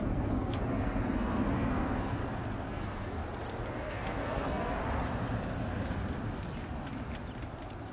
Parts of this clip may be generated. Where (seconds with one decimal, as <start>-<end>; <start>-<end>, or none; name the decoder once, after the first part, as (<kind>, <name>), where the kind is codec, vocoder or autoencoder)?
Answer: 0.0-2.2 (codec, SNAC); 2.7-3.2; 3.7-4.8